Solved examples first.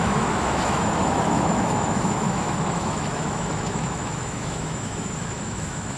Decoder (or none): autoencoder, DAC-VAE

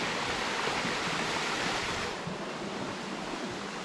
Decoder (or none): none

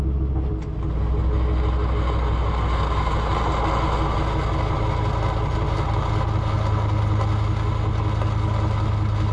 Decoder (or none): none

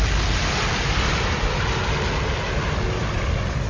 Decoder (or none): none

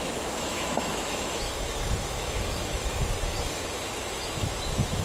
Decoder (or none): autoencoder, DAC-VAE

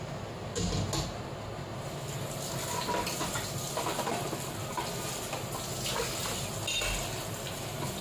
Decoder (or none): none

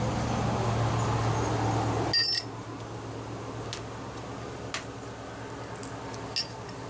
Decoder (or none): none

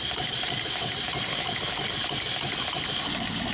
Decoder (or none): vocoder, BigVGAN v2